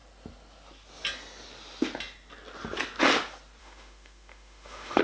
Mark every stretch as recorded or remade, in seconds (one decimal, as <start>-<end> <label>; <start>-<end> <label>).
0.0-3.6 recorded; 3.6-5.0 remade